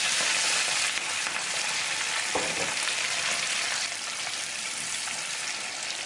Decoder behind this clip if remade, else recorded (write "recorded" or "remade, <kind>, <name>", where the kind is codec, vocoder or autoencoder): recorded